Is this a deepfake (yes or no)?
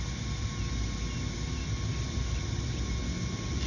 no